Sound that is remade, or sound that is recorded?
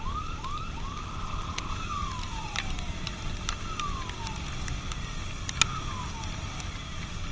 recorded